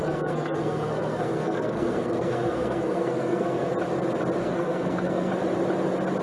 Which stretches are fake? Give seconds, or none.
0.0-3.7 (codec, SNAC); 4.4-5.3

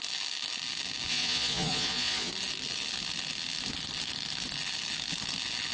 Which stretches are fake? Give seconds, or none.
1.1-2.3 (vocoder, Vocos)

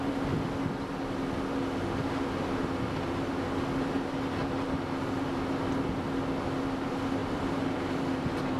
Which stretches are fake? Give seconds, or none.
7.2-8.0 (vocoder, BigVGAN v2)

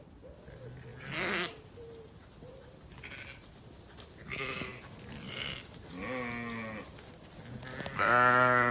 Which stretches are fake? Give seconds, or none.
none

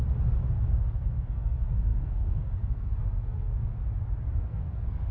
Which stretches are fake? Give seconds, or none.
0.7-3.7 (codec, SNAC); 4.3-5.1